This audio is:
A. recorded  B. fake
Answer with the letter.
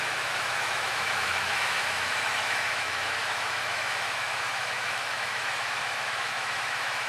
B